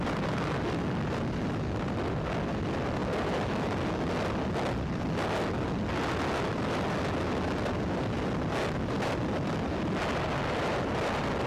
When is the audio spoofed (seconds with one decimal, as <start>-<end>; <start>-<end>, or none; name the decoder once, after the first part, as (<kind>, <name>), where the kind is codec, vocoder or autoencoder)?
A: none